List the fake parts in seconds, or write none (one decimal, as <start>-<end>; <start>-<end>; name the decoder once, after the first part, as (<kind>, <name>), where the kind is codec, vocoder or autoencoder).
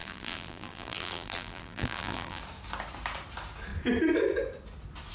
0.0-2.4 (vocoder, BigVGAN v2)